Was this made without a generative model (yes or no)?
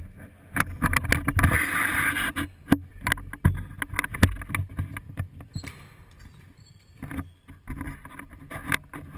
yes